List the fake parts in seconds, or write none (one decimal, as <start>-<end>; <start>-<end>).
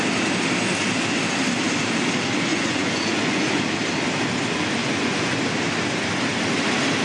2.5-3.6; 4.8-5.4